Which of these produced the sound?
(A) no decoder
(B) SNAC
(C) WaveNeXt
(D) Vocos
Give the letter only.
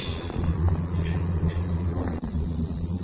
D